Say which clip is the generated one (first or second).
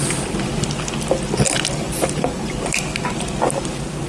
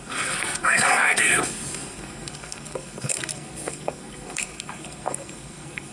second